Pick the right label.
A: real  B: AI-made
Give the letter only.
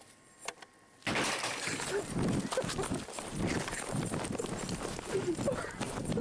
A